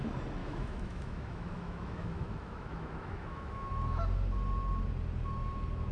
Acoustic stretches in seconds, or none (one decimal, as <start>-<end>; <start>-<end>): 0.0-0.4; 3.7-5.9